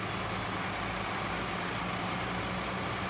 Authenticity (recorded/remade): recorded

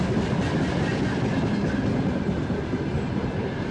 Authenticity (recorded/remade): recorded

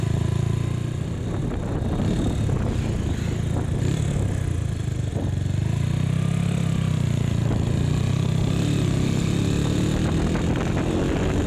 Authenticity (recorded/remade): recorded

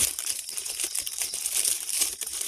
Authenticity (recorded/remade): remade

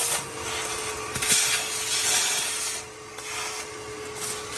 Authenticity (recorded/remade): recorded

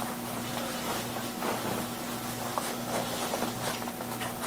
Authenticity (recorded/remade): recorded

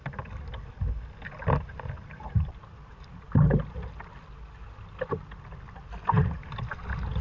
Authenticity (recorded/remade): recorded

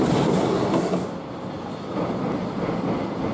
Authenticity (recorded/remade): recorded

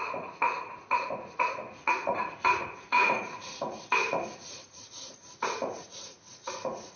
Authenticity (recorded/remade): remade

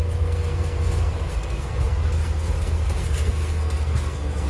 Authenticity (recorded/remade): remade